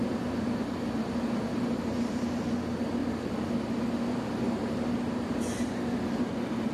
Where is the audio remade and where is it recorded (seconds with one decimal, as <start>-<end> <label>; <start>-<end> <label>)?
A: 0.0-6.7 recorded